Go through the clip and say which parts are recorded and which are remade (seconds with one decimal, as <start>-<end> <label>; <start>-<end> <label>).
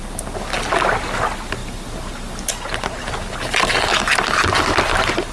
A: 0.0-5.3 recorded